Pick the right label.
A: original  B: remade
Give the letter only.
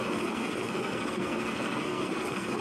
B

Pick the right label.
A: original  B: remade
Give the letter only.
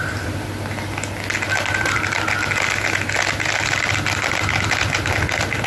A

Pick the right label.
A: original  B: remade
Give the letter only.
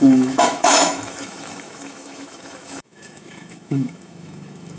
B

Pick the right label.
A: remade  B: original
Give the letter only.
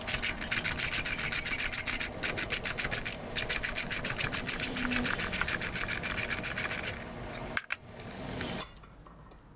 B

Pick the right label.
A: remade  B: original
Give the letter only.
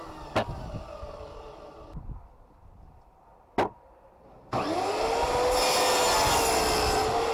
B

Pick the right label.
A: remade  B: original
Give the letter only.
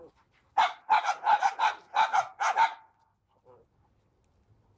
B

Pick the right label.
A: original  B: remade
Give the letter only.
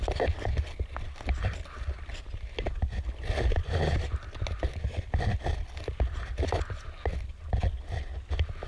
A